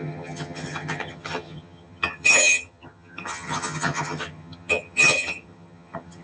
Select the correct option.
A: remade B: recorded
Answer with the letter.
A